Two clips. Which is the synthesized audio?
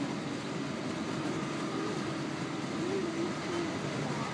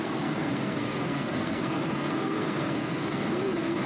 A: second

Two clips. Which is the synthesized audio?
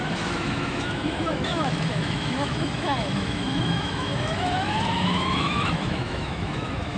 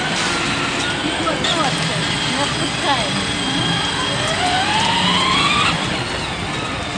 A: first